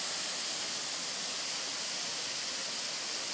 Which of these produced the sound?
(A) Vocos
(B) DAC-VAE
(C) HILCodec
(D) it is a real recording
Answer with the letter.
D